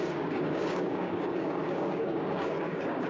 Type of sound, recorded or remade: remade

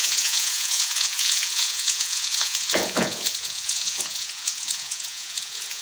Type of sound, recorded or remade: remade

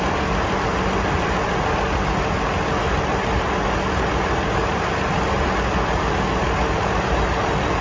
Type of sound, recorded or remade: recorded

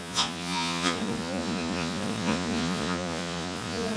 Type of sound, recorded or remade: remade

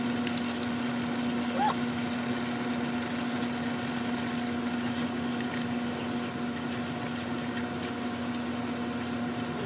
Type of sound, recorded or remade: recorded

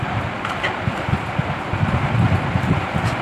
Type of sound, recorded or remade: recorded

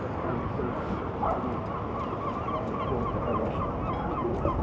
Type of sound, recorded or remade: recorded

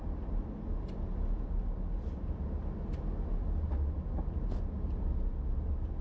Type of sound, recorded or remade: recorded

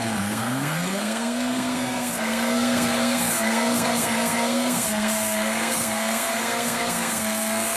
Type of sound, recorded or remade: remade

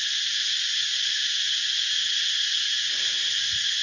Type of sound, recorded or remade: recorded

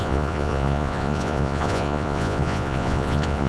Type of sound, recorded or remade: remade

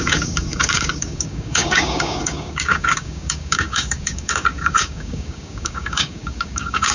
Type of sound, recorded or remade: remade